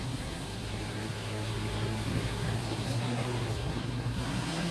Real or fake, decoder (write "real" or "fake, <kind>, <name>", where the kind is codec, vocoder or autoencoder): fake, codec, SNAC